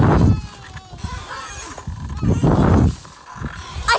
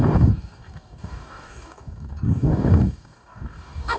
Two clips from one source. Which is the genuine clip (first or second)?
first